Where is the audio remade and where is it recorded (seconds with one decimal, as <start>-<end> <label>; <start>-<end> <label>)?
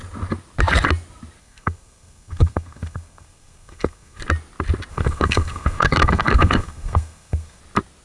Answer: 0.0-1.4 recorded; 1.4-4.2 remade; 4.2-4.9 recorded; 4.9-7.6 remade; 7.6-8.0 recorded